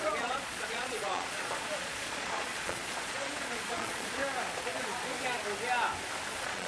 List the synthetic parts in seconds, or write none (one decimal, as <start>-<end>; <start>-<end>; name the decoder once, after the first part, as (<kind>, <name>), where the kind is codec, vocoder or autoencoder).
0.0-4.2 (vocoder, Vocos); 6.3-6.7